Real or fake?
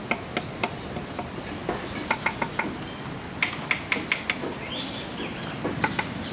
real